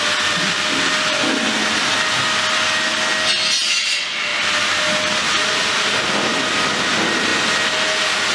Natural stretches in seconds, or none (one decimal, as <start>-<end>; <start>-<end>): 0.0-8.3